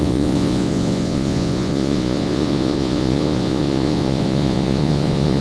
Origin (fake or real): fake